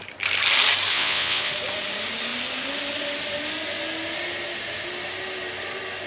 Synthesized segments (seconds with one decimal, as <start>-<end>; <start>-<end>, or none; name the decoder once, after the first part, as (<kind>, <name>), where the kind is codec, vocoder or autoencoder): 0.9-1.5 (vocoder, WaveNeXt)